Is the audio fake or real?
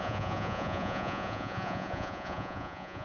fake